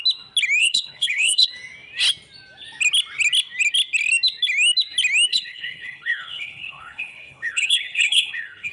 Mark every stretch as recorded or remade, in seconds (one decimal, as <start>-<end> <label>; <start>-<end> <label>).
0.0-0.6 recorded; 0.6-1.5 remade; 1.5-5.3 recorded; 5.3-8.7 remade